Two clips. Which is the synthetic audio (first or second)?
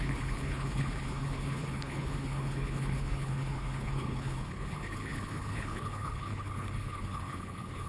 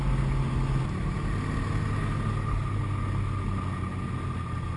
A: first